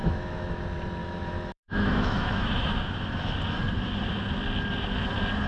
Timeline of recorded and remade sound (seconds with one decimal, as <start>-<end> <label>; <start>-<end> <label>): 0.0-0.6 remade; 0.6-1.0 recorded; 1.0-2.7 remade; 2.7-5.5 recorded